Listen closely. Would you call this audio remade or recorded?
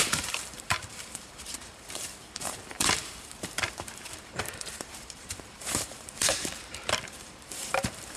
remade